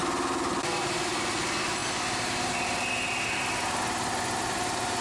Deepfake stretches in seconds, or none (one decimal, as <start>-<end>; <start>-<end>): none